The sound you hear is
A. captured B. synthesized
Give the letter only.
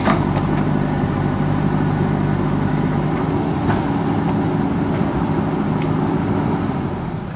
A